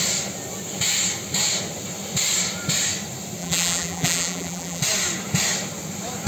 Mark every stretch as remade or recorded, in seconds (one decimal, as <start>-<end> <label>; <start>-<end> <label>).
0.0-3.4 recorded; 3.4-4.8 remade; 4.8-6.3 recorded